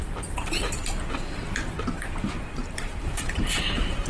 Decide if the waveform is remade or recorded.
remade